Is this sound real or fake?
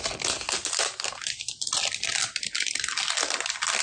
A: real